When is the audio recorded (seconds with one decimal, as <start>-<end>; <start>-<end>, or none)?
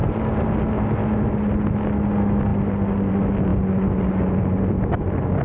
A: 0.0-5.4